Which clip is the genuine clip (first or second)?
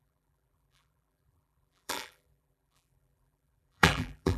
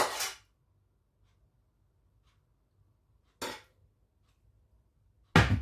second